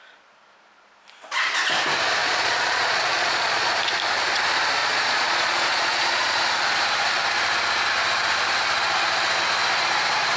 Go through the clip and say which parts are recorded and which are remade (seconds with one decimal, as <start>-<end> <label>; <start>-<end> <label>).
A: 0.0-2.2 recorded; 2.2-3.7 remade; 3.7-4.8 recorded; 4.8-6.4 remade; 6.4-10.4 recorded